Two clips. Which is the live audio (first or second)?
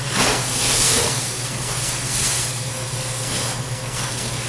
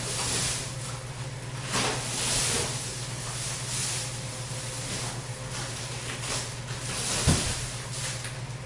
second